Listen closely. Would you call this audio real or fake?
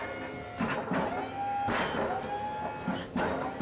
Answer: real